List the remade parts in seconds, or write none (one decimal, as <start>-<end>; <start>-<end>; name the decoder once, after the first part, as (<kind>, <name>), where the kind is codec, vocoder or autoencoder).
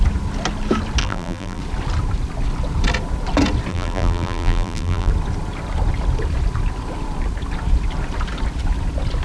1.0-1.6 (vocoder, BigVGAN v2); 3.7-5.1